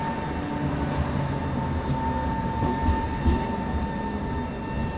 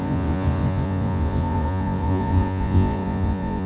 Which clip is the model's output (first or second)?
second